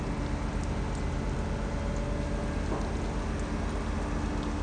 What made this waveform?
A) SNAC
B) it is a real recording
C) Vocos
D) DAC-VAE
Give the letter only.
B